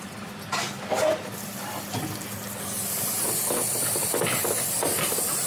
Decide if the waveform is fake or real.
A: real